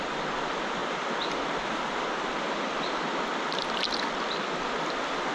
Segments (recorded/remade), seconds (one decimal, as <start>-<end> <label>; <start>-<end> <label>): 0.0-5.3 recorded

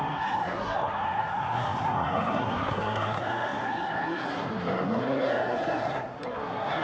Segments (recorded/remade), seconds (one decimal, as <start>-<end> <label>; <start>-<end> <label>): 0.0-6.8 remade

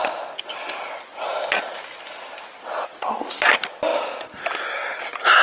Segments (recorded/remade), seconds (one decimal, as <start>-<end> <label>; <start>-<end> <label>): 0.0-5.4 recorded

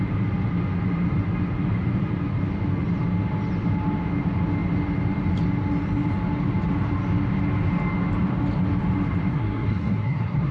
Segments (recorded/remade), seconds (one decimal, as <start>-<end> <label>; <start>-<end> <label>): 0.0-9.3 recorded; 9.3-10.5 remade